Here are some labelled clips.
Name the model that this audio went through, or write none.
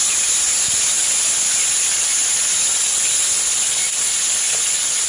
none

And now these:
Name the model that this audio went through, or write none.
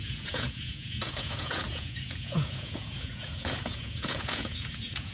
vocoder, Vocos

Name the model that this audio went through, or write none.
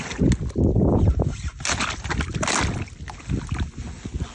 none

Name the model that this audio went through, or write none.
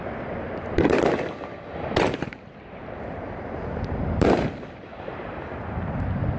vocoder, BigVGAN v2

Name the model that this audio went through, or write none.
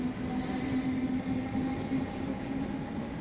none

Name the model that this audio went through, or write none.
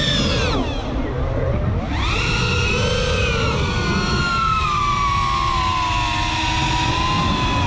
none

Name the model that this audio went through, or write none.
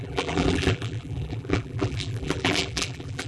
vocoder, BigVGAN v2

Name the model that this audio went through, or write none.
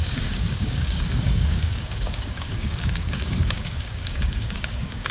codec, DAC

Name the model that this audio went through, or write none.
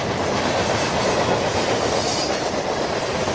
none